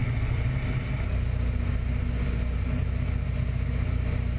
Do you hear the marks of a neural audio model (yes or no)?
no